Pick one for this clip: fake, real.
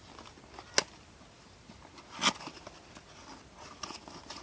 real